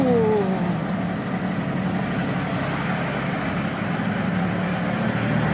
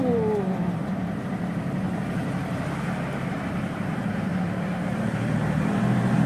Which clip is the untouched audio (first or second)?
first